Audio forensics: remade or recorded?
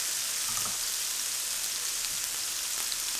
recorded